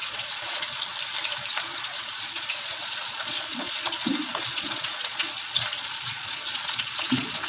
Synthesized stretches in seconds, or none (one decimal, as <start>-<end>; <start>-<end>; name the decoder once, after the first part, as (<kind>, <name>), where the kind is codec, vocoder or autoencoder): 0.0-0.9 (vocoder, Vocos); 1.5-7.5